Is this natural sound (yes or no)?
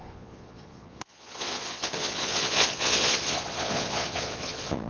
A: no